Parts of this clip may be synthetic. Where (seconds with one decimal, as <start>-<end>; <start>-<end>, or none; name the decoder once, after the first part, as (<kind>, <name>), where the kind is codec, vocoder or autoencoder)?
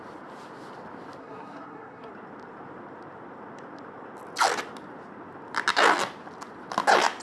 1.2-2.1 (codec, SNAC)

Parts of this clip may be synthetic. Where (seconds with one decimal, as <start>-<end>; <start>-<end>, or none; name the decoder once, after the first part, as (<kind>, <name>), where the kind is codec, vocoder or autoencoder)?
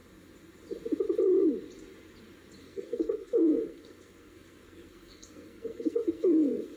2.6-6.8 (codec, SNAC)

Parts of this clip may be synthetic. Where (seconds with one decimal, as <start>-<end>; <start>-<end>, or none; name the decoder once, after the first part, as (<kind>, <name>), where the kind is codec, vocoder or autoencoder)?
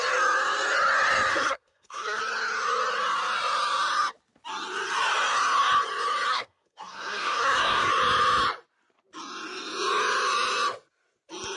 1.3-2.2 (codec, SNAC); 6.3-7.9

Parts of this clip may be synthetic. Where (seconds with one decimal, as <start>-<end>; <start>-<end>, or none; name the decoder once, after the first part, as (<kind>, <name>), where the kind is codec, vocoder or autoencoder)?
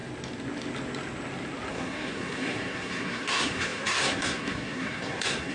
1.7-5.5 (codec, SNAC)